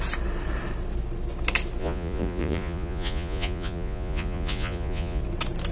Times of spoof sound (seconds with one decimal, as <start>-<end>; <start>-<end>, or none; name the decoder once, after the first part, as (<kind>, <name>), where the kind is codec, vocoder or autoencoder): 1.8-5.2 (vocoder, Vocos)